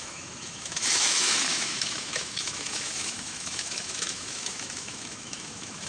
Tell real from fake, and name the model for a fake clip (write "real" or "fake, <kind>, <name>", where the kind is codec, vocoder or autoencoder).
fake, autoencoder, DAC-VAE